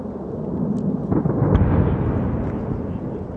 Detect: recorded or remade recorded